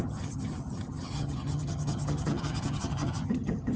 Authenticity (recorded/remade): remade